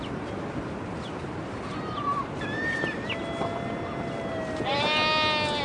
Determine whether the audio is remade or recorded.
recorded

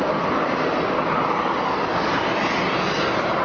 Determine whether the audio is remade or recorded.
recorded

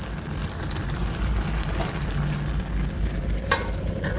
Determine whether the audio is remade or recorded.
recorded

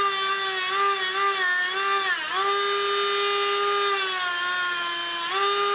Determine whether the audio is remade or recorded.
recorded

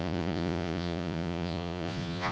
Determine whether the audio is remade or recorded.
remade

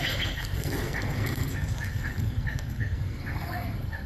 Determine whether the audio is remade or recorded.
remade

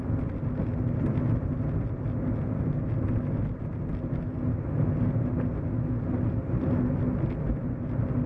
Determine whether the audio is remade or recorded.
recorded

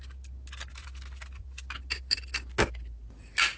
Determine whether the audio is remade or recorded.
recorded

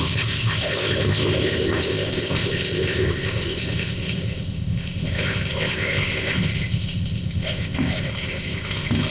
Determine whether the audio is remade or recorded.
remade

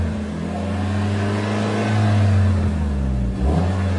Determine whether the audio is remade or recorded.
recorded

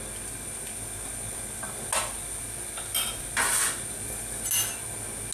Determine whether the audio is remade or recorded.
recorded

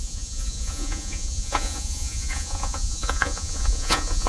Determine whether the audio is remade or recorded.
remade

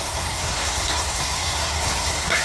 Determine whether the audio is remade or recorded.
remade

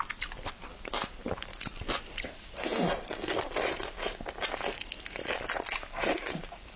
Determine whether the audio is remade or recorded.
remade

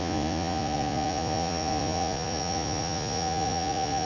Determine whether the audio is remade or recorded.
remade